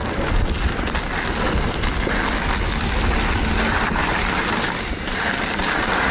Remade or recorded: recorded